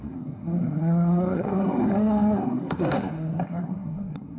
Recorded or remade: remade